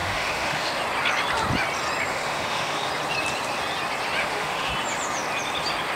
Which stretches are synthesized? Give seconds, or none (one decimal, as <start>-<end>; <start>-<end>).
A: 0.0-0.8; 2.1-2.9; 4.2-4.7